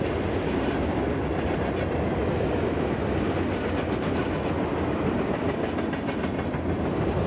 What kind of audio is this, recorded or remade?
recorded